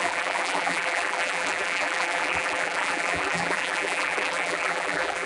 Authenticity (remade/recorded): remade